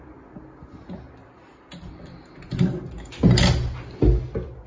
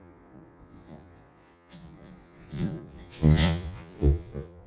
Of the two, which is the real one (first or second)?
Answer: first